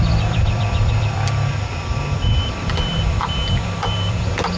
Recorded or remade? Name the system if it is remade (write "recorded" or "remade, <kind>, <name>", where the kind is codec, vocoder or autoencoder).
remade, vocoder, BigVGAN v2